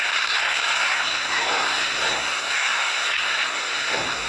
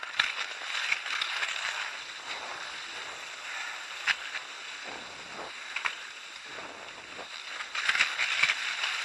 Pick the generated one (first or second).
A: first